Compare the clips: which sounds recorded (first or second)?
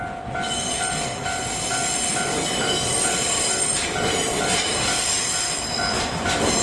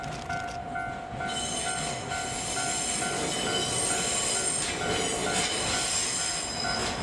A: second